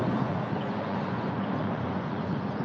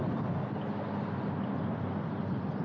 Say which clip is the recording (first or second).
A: second